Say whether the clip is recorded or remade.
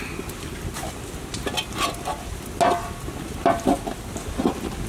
recorded